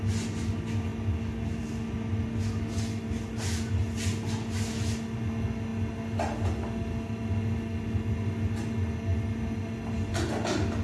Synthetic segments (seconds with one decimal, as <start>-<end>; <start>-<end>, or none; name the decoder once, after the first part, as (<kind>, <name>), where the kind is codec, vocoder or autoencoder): none